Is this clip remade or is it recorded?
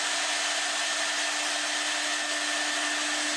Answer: recorded